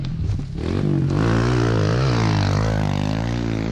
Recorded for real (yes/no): yes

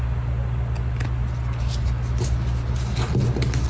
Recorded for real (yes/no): yes